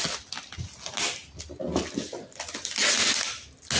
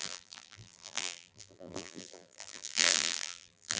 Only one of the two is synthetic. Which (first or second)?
second